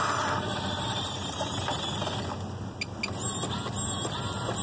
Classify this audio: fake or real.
real